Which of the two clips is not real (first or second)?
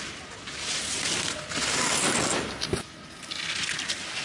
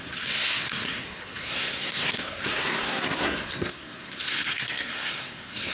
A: second